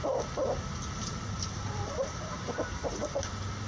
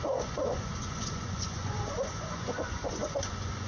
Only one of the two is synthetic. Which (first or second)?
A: second